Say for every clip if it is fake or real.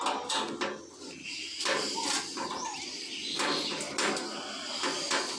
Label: real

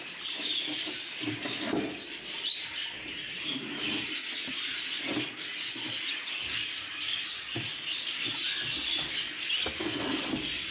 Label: real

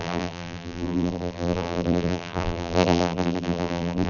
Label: fake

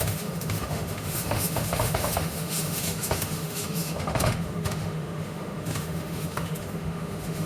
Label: fake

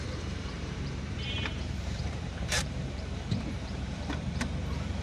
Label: fake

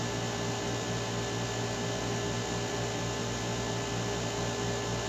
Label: real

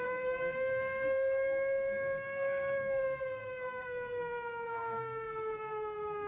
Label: fake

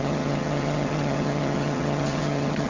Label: fake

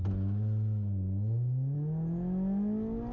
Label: real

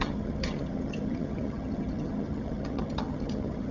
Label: fake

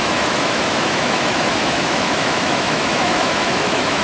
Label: fake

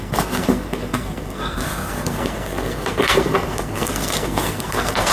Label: fake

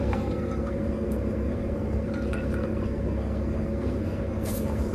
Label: fake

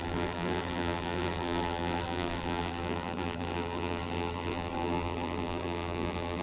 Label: fake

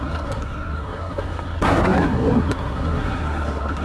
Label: fake